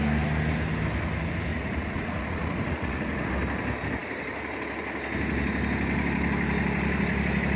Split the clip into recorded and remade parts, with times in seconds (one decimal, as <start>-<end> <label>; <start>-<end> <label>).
0.0-1.5 recorded; 1.5-3.3 remade; 3.3-7.6 recorded